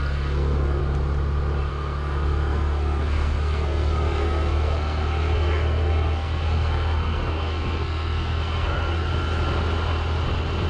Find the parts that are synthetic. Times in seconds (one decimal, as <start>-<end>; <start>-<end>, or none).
0.0-0.8; 1.7-9.1